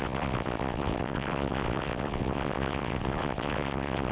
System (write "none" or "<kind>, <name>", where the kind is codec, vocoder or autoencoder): vocoder, WaveNeXt